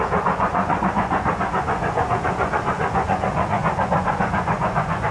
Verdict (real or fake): fake